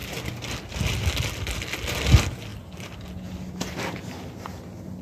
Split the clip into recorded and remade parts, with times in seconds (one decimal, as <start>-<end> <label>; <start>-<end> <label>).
0.0-5.0 recorded